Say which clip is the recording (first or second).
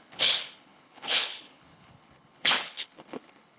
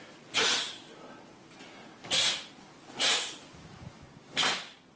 second